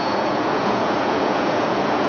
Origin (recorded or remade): remade